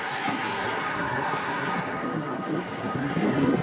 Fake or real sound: fake